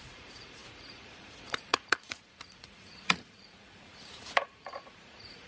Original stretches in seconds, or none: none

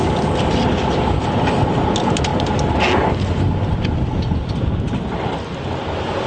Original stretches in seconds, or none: 0.0-6.3

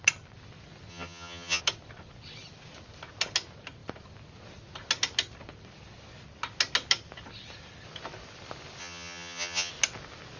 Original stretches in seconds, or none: 0.0-0.9; 1.6-8.8; 9.7-10.4

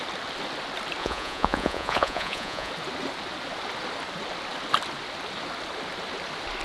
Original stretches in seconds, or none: 0.0-1.0; 2.7-6.6

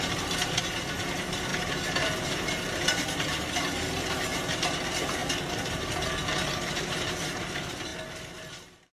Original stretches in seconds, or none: 5.2-5.7; 7.9-8.5

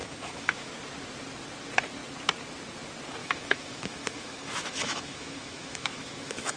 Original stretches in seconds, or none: 0.7-3.2

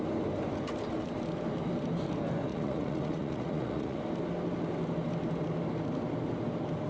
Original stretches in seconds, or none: 0.0-2.5; 4.0-6.9